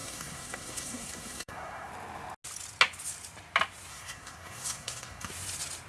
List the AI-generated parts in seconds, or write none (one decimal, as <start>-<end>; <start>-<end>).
0.0-1.9; 3.9-5.3